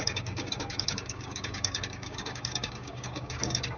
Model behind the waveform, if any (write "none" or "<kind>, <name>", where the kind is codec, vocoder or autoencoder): codec, DAC